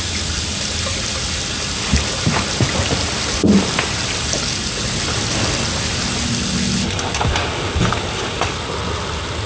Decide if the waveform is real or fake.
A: real